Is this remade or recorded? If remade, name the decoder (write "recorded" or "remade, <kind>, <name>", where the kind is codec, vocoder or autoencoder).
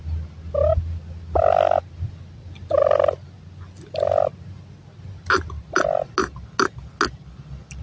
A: recorded